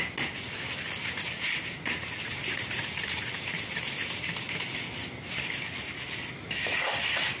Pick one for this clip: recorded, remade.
recorded